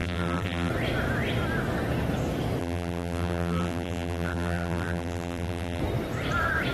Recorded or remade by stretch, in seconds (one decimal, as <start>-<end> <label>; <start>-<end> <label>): 0.0-0.7 remade; 0.7-2.6 recorded; 2.6-5.8 remade; 5.8-6.7 recorded